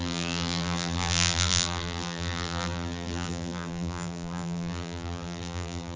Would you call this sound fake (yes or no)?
yes